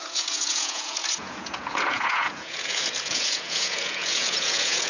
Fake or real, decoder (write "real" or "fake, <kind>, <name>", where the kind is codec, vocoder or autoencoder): fake, vocoder, Vocos